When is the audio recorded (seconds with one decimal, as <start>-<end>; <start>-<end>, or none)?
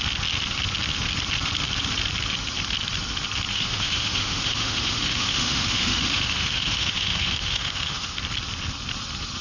0.0-3.5; 8.2-9.4